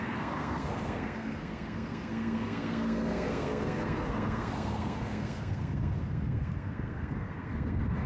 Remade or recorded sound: remade